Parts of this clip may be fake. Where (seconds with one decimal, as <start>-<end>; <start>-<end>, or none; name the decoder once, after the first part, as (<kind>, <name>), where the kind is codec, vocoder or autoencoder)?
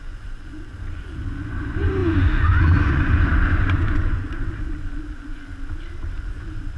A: 0.0-5.5 (vocoder, Vocos); 6.2-6.8